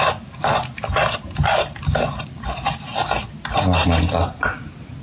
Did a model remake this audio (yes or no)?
no